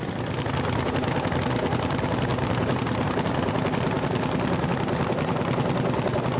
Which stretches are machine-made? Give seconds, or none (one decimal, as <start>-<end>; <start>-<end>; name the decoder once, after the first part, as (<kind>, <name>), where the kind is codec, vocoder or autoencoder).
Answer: 2.3-3.3 (vocoder, BigVGAN v2)